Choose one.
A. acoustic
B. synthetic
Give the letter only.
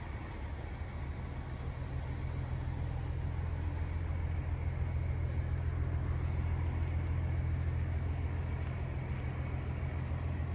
A